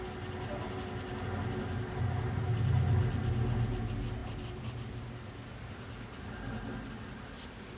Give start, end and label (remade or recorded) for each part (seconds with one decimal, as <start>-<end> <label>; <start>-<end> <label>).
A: 0.0-7.8 recorded